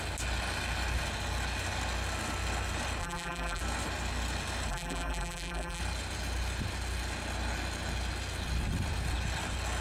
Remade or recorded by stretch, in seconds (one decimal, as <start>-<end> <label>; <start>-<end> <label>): 0.0-3.0 recorded; 3.0-3.6 remade; 3.6-4.7 recorded; 4.7-5.8 remade; 5.8-9.8 recorded